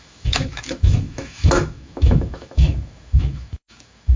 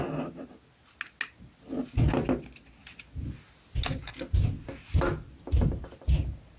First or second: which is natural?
second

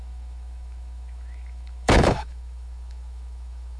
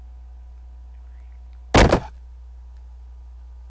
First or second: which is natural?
second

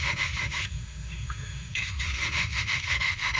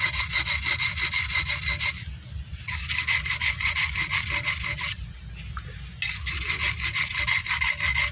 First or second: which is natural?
second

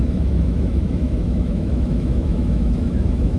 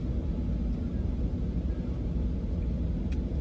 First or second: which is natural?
second